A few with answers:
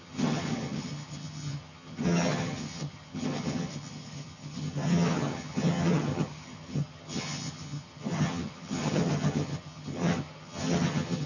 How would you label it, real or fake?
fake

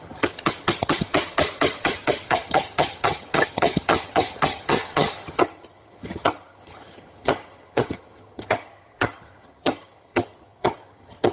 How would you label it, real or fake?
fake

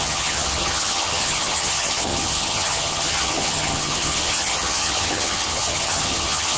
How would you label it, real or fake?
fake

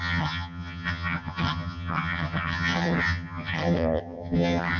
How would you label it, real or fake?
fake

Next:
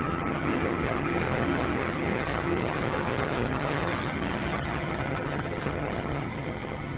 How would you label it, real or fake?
fake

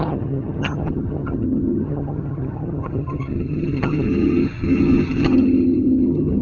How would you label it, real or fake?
fake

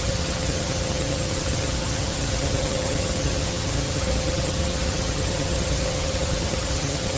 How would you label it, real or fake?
fake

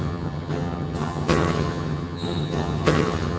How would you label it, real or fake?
fake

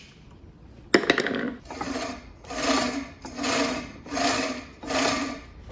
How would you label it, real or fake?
real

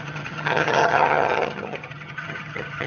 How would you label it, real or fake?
fake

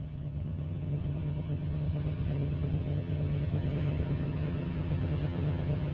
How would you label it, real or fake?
fake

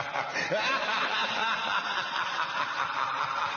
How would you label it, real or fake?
real